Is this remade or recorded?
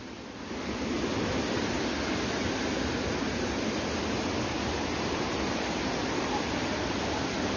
recorded